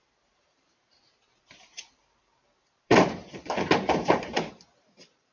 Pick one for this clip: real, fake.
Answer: fake